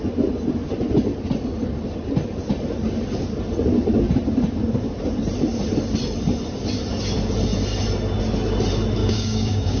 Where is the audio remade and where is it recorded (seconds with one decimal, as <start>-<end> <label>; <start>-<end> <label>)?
0.0-9.0 recorded; 9.0-9.8 remade